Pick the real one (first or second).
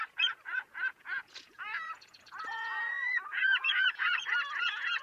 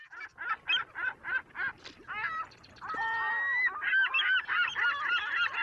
second